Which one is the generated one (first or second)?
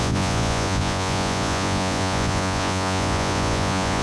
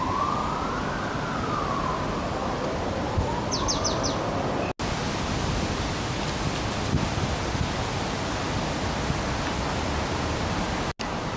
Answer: first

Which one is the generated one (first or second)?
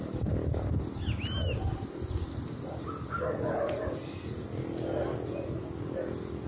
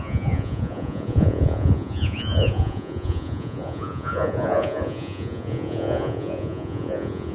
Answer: second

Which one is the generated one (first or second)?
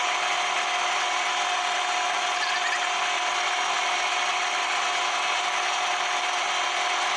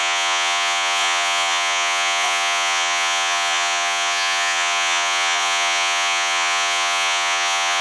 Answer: second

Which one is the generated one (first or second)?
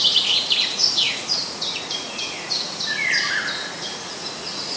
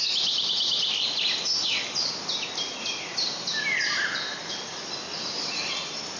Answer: first